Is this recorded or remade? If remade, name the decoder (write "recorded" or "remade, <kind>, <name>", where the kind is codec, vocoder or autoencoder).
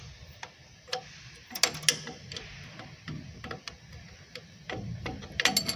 recorded